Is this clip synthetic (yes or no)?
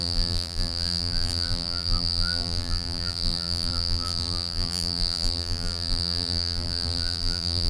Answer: yes